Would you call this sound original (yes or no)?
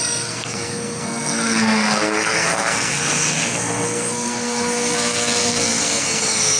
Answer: no